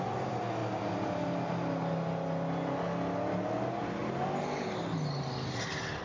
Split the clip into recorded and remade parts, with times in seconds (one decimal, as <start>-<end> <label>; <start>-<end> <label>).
0.0-6.0 recorded